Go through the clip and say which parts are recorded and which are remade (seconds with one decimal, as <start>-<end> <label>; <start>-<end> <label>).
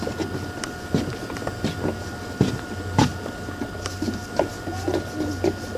0.0-5.8 recorded